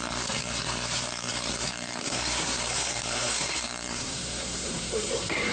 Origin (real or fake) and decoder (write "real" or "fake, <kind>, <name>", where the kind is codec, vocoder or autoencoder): fake, codec, SNAC